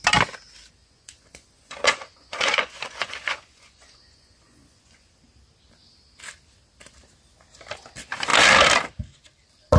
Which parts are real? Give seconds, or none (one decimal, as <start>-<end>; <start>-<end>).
0.0-0.8; 5.2-9.8